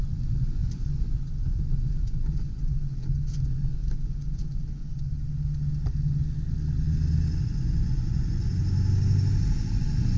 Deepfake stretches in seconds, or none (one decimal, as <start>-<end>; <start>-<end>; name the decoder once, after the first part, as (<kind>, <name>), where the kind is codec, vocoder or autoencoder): 0.0-4.8 (vocoder, Vocos); 7.4-8.5; 9.6-10.2